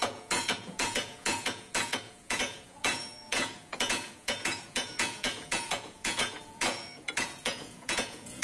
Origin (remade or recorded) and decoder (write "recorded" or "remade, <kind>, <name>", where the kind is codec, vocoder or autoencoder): remade, vocoder, Vocos